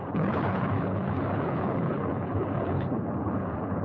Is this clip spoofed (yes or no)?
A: yes